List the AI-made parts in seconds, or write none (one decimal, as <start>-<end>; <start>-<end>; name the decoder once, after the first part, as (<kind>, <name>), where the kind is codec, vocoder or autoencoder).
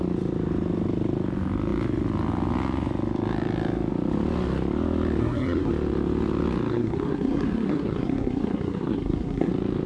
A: 5.2-5.7 (codec, SNAC); 6.7-9.5